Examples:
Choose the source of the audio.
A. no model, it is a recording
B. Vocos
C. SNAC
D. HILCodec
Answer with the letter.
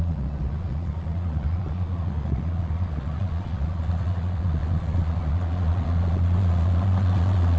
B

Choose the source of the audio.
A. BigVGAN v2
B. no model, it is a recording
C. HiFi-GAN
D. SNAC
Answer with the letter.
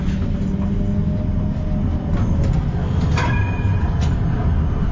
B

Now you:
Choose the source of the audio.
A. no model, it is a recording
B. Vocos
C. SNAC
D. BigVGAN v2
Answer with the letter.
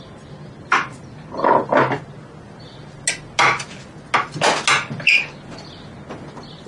A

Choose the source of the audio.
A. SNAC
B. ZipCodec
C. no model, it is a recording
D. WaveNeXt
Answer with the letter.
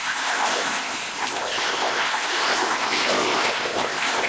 B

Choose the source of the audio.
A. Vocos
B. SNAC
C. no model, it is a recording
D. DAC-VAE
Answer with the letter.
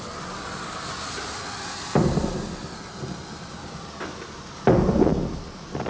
C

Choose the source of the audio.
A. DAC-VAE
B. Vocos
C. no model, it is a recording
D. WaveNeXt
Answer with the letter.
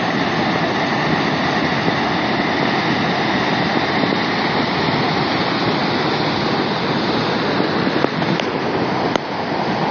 C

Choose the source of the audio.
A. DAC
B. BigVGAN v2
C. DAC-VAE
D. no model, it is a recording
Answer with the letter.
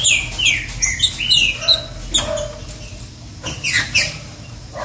D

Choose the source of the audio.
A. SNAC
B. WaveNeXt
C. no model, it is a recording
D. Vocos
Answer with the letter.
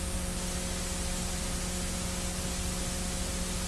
C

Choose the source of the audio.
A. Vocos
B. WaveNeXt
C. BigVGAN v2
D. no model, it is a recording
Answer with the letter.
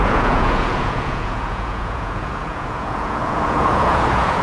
A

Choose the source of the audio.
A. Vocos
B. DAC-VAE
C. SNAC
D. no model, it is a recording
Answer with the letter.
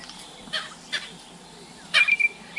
D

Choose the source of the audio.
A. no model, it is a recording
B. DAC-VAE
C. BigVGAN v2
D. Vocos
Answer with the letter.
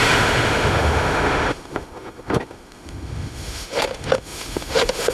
B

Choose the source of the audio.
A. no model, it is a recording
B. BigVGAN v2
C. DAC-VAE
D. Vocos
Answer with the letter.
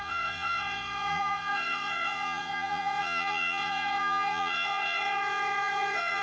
D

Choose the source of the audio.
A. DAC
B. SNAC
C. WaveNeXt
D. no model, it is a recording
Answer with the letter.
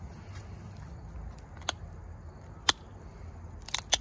D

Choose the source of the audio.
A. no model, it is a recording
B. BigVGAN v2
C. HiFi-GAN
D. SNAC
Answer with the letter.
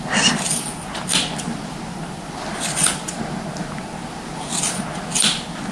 A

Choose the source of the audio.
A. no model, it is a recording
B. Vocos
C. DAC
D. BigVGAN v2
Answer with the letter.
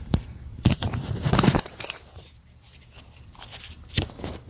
D